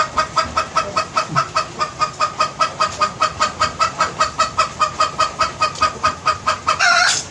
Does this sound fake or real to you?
fake